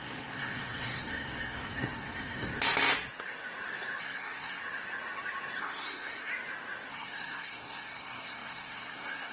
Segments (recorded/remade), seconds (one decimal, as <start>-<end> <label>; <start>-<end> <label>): 0.0-2.5 remade; 2.5-4.0 recorded; 4.0-4.6 remade; 4.6-5.6 recorded; 5.6-6.3 remade; 6.3-6.9 recorded; 6.9-9.3 remade